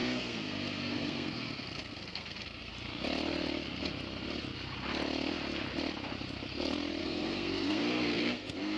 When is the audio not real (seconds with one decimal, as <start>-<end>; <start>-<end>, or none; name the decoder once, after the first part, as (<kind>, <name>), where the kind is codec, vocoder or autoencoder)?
0.0-2.7 (codec, SNAC); 7.0-8.8